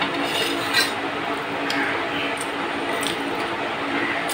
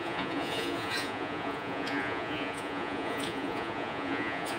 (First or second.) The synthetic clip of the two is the second